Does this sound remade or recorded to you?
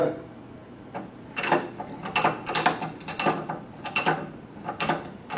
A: recorded